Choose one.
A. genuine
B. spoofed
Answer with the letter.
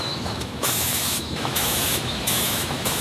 B